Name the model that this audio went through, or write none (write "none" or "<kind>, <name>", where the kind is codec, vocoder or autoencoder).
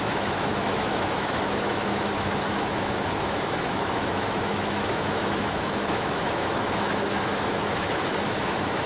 autoencoder, DAC-VAE